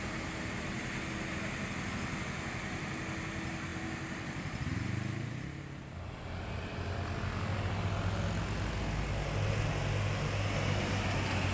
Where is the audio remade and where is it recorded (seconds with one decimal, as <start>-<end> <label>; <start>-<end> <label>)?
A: 0.0-11.5 recorded